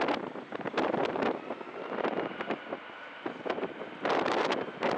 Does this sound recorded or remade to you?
recorded